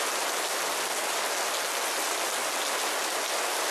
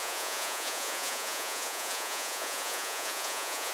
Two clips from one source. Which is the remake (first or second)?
second